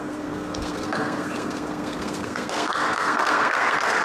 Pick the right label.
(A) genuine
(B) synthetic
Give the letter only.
B